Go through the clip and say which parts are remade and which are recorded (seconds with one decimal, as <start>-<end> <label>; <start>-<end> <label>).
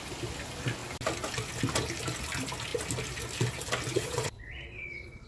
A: 0.0-3.9 recorded; 3.9-5.3 remade